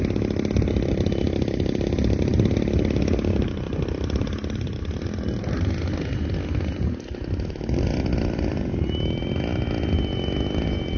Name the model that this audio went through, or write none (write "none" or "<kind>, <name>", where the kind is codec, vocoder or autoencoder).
none